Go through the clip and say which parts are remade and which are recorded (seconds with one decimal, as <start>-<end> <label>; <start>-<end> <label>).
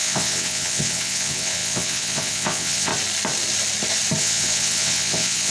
0.0-2.9 remade; 2.9-4.2 recorded; 4.2-5.5 remade